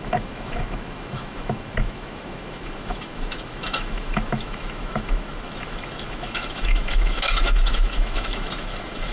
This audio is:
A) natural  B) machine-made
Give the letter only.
B